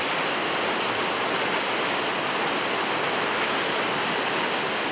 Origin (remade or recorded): recorded